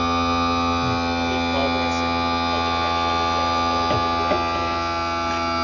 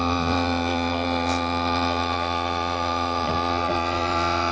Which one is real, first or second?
first